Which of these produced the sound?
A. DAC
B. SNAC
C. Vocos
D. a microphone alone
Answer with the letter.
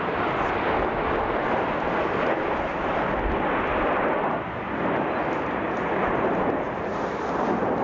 D